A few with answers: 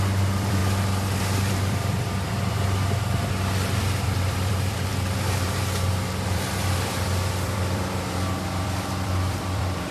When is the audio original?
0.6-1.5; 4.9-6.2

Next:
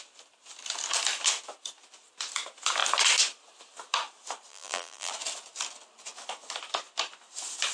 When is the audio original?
0.0-4.5; 5.1-7.7

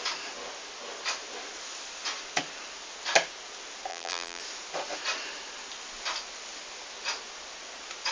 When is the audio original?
0.0-3.9; 4.4-8.1

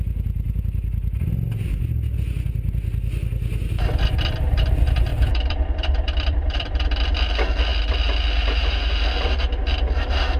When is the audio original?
0.0-5.1; 6.9-10.4

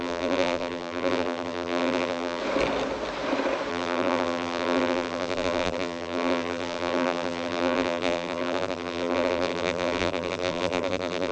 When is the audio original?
2.4-3.7

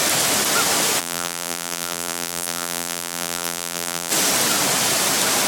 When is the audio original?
0.0-1.0; 4.1-5.5

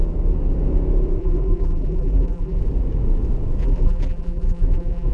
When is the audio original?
0.0-1.2; 2.6-3.6

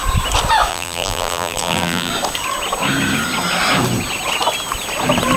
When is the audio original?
0.0-0.7; 2.1-5.4